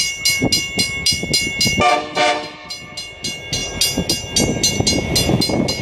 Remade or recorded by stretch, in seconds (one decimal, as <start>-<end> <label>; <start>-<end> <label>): 0.0-5.8 recorded